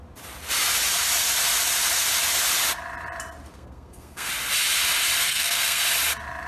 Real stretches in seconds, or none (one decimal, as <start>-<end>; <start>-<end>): 0.0-3.5; 4.3-5.2; 5.8-6.5